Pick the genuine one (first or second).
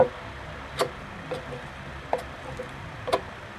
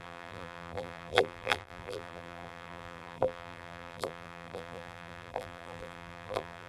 first